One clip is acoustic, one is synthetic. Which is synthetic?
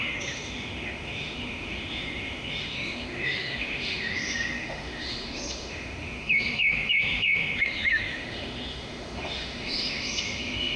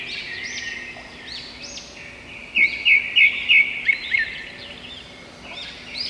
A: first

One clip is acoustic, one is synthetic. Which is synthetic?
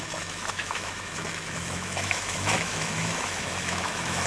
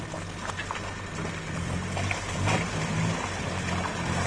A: first